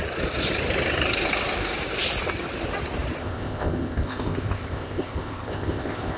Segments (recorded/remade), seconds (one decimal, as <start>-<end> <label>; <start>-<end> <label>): 0.0-3.2 recorded; 3.2-6.2 remade